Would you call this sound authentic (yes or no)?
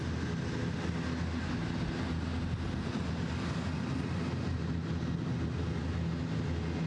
yes